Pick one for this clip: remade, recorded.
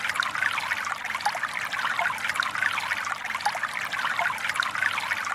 recorded